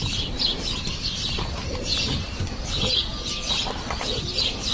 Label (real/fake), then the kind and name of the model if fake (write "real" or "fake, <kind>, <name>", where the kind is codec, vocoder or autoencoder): fake, vocoder, BigVGAN v2